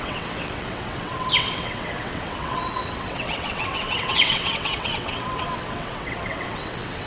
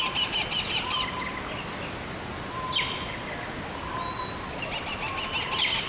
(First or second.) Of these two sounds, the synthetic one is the first